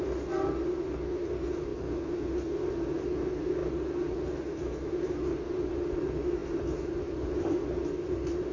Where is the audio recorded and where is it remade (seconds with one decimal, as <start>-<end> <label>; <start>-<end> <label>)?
0.0-8.5 recorded